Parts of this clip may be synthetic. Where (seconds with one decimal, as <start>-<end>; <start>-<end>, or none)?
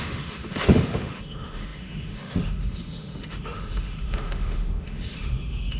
0.0-5.8